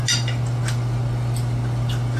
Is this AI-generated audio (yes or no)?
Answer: no